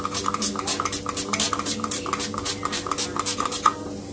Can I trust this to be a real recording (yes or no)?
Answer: yes